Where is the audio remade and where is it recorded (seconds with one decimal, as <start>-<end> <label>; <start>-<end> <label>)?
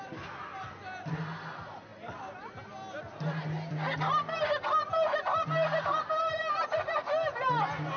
0.0-8.0 recorded